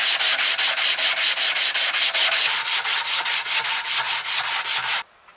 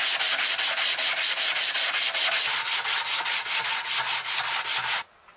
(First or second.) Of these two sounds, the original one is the second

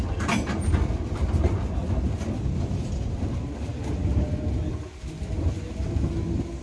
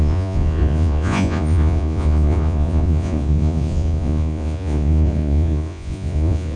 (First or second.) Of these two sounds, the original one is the first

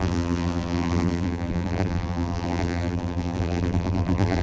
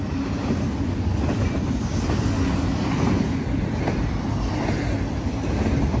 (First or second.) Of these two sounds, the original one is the second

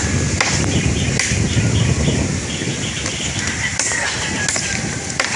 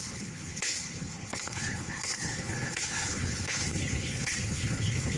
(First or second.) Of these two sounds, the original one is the first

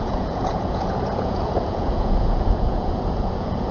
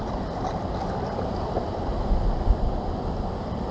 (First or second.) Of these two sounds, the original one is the second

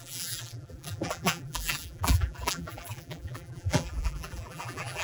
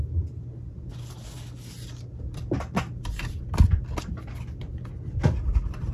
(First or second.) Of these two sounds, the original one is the second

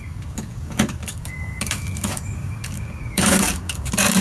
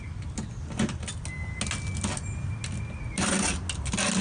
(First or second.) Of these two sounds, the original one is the second